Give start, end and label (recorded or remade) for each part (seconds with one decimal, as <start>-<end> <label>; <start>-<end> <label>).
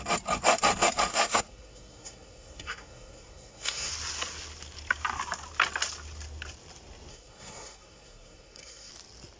0.0-1.1 recorded; 1.1-3.9 remade; 3.9-7.1 recorded; 7.1-8.9 remade; 8.9-9.4 recorded